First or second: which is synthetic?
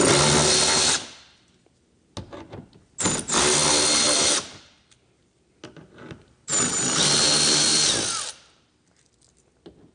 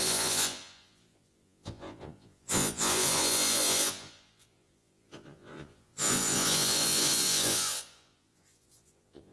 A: second